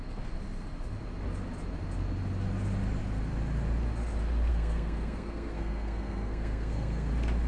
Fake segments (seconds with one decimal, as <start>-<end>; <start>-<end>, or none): 4.5-7.1